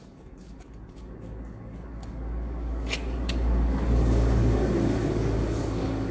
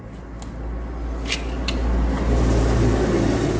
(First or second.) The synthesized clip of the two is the first